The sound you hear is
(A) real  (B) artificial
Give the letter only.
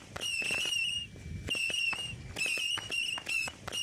A